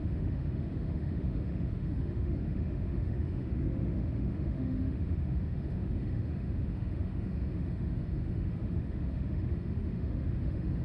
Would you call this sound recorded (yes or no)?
no